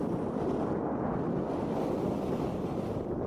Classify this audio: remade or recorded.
recorded